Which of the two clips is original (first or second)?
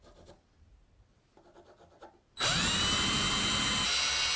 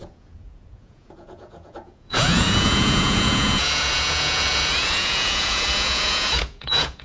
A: first